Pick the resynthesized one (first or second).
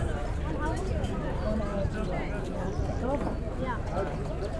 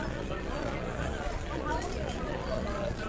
second